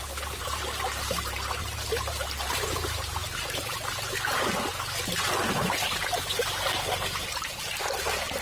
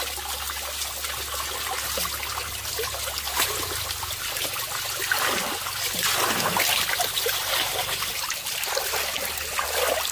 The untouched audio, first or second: second